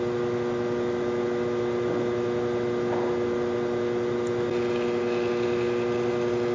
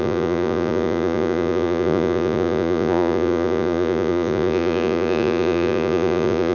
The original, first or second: first